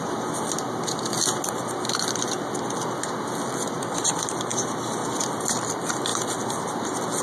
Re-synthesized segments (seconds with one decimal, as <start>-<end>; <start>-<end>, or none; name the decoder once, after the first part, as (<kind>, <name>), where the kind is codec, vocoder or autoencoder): none